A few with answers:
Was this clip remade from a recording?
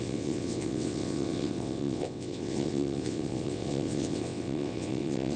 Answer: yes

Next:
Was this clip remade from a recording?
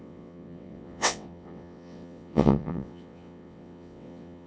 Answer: yes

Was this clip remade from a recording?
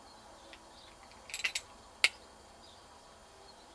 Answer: no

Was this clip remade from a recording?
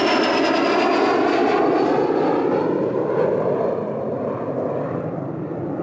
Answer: no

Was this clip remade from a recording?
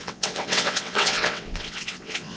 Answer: yes